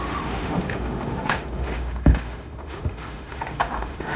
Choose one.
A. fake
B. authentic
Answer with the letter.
A